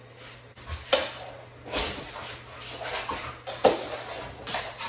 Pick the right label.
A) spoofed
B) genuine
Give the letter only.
B